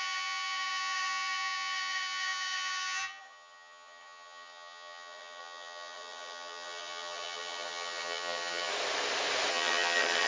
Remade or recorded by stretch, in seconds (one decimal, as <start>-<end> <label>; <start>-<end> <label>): 0.0-8.7 remade; 8.7-9.5 recorded; 9.5-10.3 remade